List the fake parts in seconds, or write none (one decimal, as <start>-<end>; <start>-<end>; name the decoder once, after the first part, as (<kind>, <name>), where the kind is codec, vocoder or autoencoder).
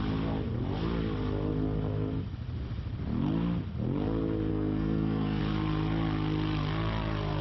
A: 4.5-5.4 (codec, SNAC)